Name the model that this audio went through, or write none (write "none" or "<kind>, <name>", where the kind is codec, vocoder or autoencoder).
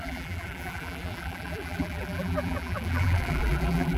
vocoder, BigVGAN v2